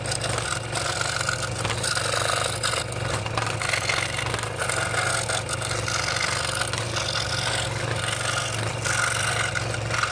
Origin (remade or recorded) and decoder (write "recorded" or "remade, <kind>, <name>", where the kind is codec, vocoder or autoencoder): recorded